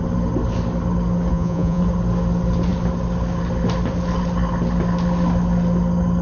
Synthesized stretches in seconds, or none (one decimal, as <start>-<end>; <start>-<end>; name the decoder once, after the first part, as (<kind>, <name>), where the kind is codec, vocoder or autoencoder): 1.3-1.8 (vocoder, Vocos)